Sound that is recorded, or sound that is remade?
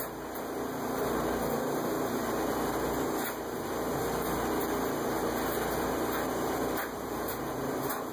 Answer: recorded